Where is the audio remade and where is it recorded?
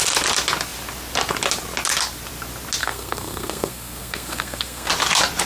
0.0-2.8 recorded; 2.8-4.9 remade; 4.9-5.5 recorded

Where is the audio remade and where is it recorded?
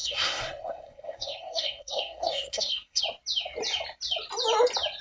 0.0-3.0 remade; 3.0-5.0 recorded